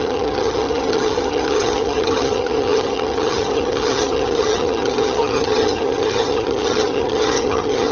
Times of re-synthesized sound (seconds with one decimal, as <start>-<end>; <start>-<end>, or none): 0.0-7.9